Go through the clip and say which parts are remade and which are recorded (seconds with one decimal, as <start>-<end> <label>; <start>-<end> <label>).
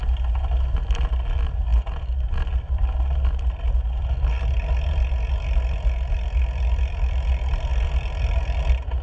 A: 0.0-9.0 recorded